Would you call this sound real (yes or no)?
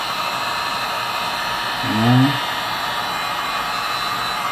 yes